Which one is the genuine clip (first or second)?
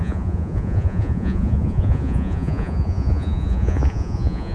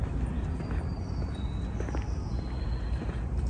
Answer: second